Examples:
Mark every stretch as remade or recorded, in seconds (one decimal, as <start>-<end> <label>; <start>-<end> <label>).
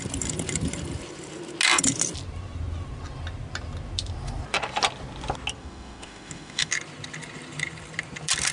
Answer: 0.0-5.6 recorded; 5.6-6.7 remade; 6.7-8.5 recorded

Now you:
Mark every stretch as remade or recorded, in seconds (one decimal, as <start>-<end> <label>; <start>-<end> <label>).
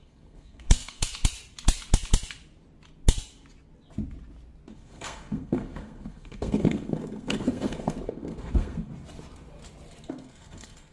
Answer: 0.0-1.1 remade; 1.1-4.7 recorded; 4.7-8.9 remade; 8.9-10.1 recorded; 10.1-10.9 remade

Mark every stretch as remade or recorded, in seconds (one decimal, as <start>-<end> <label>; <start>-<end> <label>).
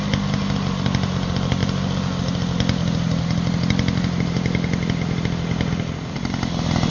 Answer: 0.0-6.9 recorded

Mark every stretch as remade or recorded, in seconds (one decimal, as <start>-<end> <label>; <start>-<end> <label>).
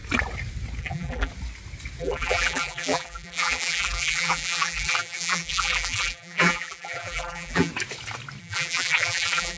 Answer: 0.0-0.8 recorded; 0.8-1.3 remade; 1.3-2.0 recorded; 2.0-7.7 remade; 7.7-8.4 recorded; 8.4-9.6 remade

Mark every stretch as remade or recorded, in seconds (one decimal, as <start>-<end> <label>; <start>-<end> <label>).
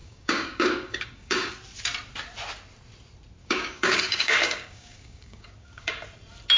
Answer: 0.0-1.5 remade; 1.5-3.4 recorded; 3.4-5.9 remade; 5.9-6.6 recorded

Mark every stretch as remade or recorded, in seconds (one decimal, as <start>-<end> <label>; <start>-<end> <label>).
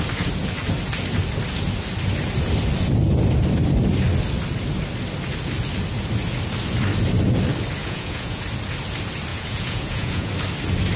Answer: 0.0-7.8 recorded; 7.8-8.4 remade; 8.4-9.3 recorded; 9.3-10.3 remade; 10.3-11.0 recorded